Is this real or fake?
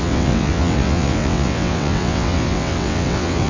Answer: fake